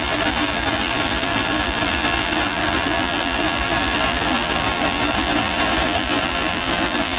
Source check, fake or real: fake